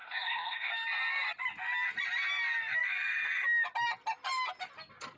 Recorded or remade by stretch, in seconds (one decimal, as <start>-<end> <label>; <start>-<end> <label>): 0.0-0.7 remade; 0.7-5.2 recorded